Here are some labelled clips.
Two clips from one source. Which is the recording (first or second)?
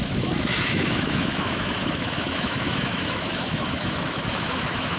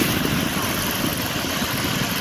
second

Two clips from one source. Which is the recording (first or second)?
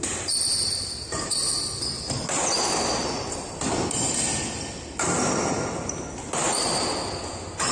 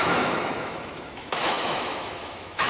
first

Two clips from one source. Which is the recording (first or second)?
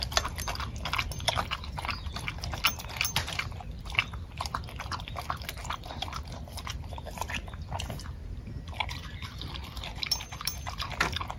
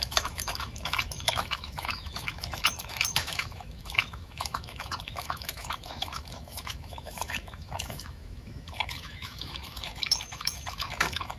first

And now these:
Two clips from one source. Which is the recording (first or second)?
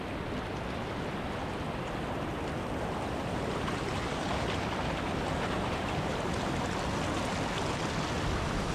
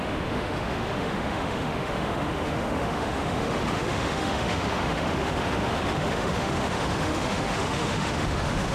first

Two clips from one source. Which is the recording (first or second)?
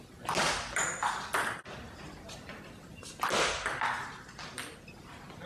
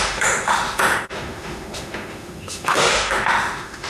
first